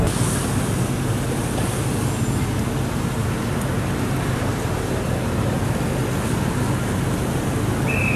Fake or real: real